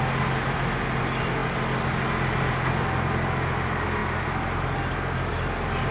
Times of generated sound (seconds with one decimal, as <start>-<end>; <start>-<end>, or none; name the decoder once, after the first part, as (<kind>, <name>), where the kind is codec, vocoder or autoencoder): none